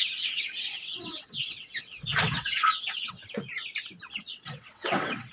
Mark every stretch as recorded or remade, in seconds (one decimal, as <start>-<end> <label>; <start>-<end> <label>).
0.0-3.2 remade; 3.2-4.2 recorded; 4.2-5.3 remade